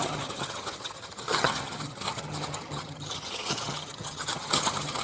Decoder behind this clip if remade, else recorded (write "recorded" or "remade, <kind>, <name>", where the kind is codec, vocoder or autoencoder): remade, vocoder, HiFi-GAN